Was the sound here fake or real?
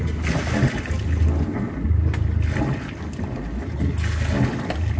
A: real